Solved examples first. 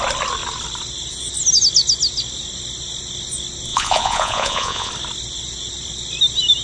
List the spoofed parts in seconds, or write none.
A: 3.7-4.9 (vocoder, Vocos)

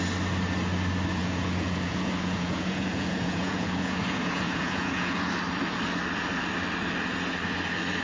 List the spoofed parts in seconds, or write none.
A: 1.2-5.3 (vocoder, Vocos)